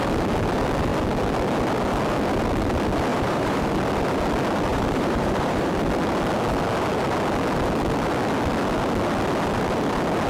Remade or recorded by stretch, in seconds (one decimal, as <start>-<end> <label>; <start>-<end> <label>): 0.0-3.1 recorded; 3.1-3.7 remade; 3.7-4.7 recorded; 4.7-5.7 remade; 5.7-10.3 recorded